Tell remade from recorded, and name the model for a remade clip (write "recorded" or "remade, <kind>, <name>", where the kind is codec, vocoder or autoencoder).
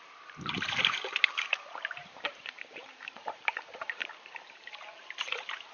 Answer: remade, vocoder, BigVGAN v2